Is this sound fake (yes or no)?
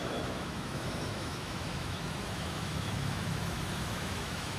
yes